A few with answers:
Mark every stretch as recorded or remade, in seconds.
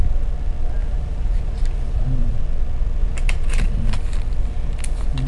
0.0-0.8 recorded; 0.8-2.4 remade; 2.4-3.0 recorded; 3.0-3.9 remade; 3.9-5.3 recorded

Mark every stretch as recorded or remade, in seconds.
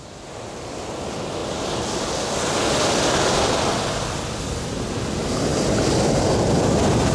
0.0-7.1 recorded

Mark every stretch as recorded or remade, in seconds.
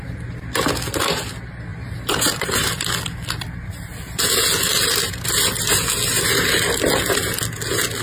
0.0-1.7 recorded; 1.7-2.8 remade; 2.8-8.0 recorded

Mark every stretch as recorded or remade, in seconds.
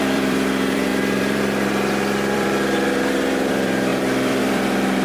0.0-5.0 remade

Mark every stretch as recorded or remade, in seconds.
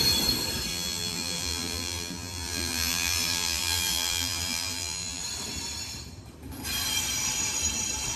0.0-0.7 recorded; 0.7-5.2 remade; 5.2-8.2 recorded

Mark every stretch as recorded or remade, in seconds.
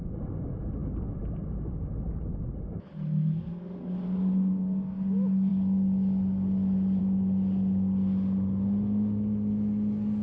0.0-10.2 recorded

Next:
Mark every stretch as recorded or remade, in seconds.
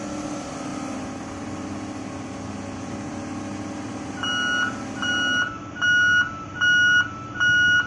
0.0-7.9 recorded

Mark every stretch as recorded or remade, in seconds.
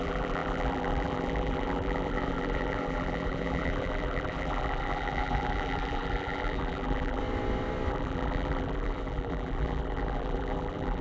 0.0-7.2 remade; 7.2-7.9 recorded; 7.9-11.0 remade